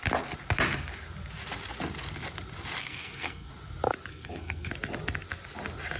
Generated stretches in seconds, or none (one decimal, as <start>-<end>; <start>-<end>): 2.8-3.5; 4.1-4.7